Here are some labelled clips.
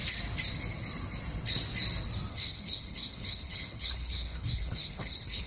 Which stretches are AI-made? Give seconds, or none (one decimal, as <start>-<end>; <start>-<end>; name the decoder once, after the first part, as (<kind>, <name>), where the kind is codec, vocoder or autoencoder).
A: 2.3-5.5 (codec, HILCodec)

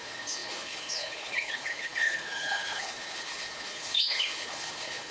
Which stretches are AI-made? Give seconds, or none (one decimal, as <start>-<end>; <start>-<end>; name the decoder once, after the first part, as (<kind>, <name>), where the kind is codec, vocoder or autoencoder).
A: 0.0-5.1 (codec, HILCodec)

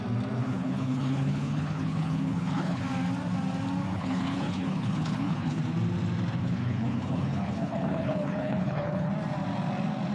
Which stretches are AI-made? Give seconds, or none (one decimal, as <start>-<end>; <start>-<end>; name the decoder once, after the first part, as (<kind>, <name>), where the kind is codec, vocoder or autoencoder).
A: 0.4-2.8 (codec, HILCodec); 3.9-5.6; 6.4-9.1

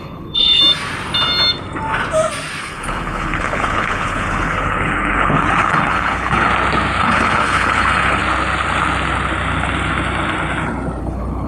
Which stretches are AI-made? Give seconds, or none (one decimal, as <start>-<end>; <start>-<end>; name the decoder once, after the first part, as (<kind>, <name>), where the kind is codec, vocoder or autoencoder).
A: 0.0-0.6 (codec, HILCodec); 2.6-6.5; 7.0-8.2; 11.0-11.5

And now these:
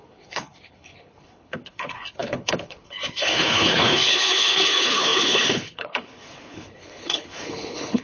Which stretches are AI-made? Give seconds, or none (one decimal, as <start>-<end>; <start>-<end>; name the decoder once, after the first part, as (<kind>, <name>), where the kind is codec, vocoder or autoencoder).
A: 0.0-8.0 (codec, HILCodec)

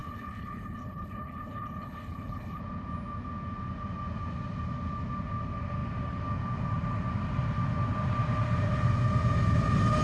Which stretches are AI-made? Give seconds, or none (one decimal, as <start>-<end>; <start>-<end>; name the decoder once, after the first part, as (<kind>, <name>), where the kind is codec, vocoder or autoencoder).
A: 0.0-2.6 (codec, HILCodec)

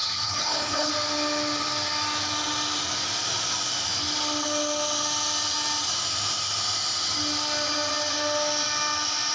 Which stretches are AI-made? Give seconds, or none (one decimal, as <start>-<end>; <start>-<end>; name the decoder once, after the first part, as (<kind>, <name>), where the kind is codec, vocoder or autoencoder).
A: 0.0-0.9 (codec, HILCodec)